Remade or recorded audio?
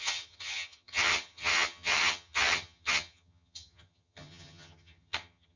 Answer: remade